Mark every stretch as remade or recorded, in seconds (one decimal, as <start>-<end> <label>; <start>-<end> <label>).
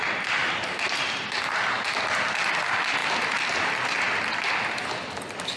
0.0-3.0 recorded; 3.0-4.5 remade; 4.5-5.6 recorded